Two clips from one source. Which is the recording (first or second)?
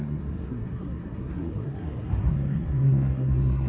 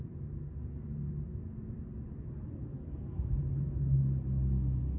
second